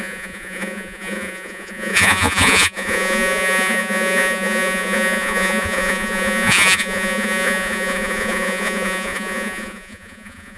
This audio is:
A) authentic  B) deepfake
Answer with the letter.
B